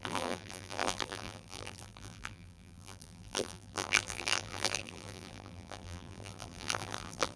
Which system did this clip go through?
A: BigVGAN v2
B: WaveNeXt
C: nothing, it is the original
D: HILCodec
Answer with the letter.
A